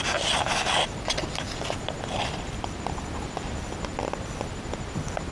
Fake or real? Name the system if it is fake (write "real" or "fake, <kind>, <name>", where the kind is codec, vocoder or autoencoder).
real